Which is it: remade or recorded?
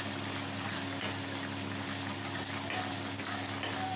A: recorded